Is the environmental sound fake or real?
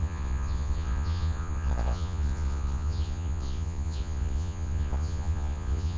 fake